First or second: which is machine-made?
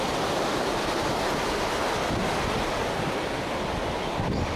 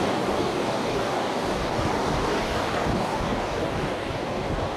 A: second